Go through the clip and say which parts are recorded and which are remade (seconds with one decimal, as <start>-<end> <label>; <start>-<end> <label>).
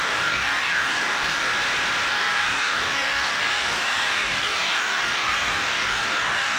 0.0-1.5 remade; 1.5-2.1 recorded; 2.1-6.6 remade